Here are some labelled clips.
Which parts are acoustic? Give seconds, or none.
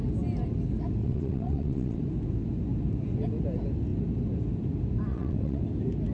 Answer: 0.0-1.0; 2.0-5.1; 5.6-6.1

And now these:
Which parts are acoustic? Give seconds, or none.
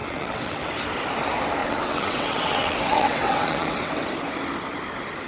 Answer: 0.7-1.6; 4.1-5.3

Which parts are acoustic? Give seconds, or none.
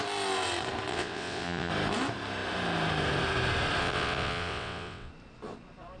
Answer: 0.0-0.9; 1.7-3.8; 5.1-6.0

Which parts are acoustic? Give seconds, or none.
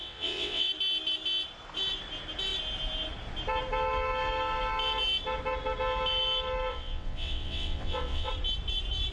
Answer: 0.7-6.7; 8.3-9.1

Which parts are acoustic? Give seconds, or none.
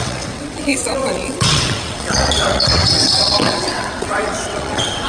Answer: none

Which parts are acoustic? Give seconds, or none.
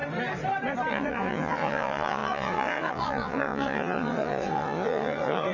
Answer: 0.0-0.9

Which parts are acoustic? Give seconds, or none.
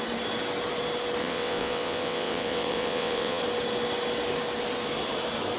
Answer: 0.0-1.2; 3.4-5.6